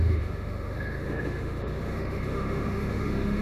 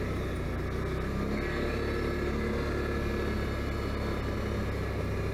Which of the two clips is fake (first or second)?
first